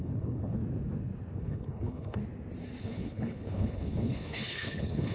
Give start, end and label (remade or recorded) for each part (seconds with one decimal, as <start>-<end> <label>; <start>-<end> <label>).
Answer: 0.0-0.6 remade; 0.6-1.4 recorded; 1.4-2.2 remade; 2.2-2.8 recorded; 2.8-5.1 remade